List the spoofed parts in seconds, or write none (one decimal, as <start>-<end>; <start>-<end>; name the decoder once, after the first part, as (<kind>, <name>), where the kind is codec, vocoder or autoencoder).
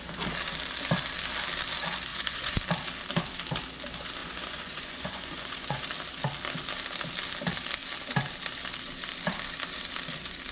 2.1-2.6 (vocoder, Vocos); 4.2-5.8